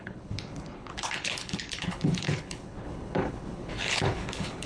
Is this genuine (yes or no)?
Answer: no